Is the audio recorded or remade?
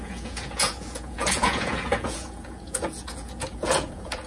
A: remade